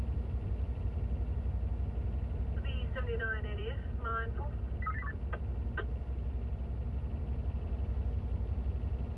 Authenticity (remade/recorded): remade